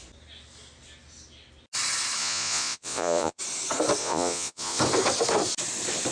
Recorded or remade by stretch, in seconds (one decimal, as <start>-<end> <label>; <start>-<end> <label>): 0.0-2.2 recorded; 2.2-3.4 remade; 3.4-4.0 recorded; 4.0-4.8 remade; 4.8-6.1 recorded